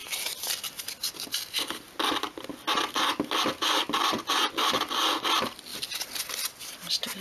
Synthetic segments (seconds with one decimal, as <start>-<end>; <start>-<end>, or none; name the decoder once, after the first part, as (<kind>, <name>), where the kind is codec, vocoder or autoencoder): none